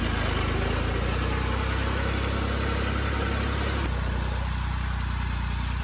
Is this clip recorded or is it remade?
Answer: recorded